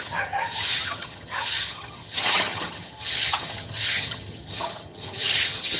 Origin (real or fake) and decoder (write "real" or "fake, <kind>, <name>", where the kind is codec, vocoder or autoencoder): fake, vocoder, HiFi-GAN